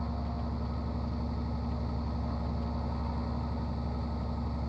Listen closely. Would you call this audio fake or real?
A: real